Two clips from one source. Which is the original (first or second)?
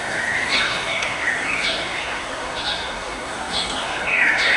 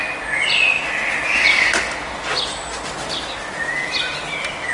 second